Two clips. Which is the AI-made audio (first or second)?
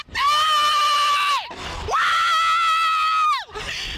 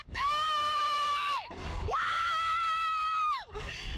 second